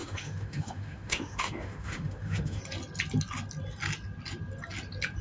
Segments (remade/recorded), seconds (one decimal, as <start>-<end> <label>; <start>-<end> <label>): 0.0-2.6 remade; 2.6-5.2 recorded